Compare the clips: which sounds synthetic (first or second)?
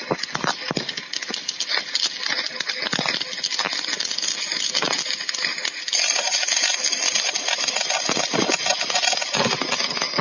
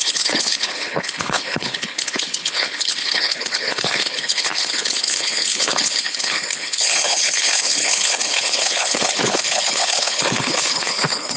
second